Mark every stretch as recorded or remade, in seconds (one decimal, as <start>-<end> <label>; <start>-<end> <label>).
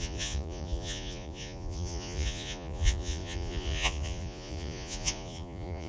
0.0-5.9 remade